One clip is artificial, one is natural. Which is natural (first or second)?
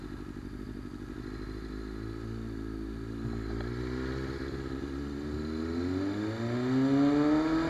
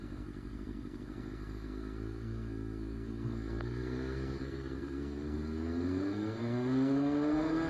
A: first